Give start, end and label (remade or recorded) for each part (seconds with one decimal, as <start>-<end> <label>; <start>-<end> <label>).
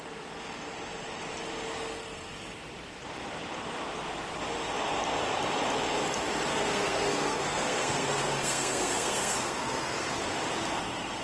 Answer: 0.0-6.5 recorded; 6.5-10.2 remade; 10.2-11.2 recorded